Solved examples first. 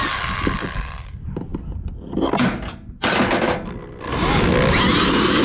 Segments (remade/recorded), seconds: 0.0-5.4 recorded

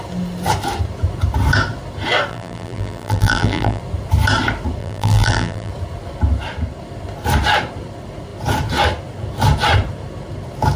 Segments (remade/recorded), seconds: 0.0-2.3 recorded; 2.3-3.8 remade; 3.8-4.8 recorded; 4.8-5.7 remade; 5.7-10.8 recorded

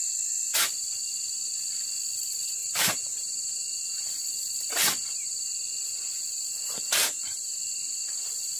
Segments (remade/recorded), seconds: 0.0-2.6 recorded; 2.6-4.2 remade; 4.2-7.0 recorded; 7.0-7.6 remade; 7.6-8.6 recorded

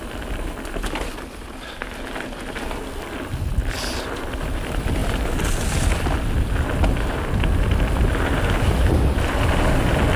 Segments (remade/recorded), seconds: 0.0-10.2 recorded

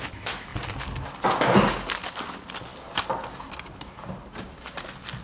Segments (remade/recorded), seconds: 0.0-5.2 recorded

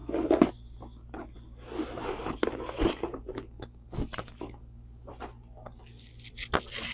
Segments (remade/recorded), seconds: 0.0-0.5 remade; 0.5-2.0 recorded; 2.0-5.1 remade; 5.1-6.9 recorded

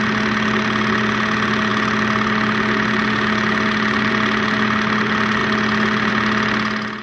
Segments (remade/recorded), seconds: 0.0-7.0 recorded